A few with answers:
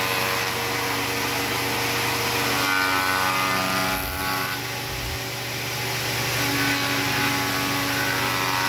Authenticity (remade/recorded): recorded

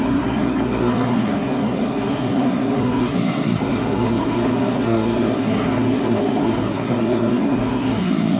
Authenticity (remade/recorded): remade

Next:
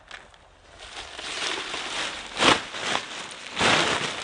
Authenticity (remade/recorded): recorded